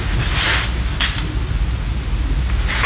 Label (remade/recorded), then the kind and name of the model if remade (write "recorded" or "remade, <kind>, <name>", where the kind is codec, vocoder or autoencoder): recorded